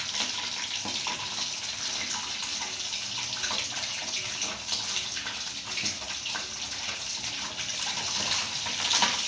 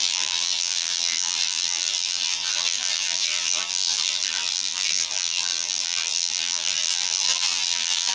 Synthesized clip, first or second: second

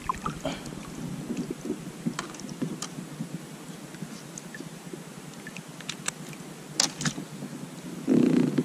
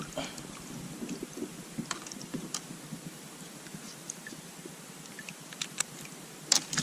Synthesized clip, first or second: second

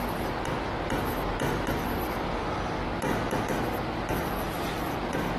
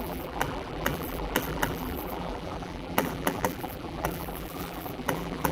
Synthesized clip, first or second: second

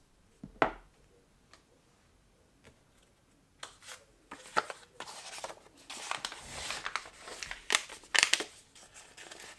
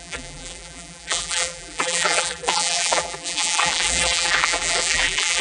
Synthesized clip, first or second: second